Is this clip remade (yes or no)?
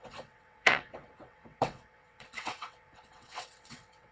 yes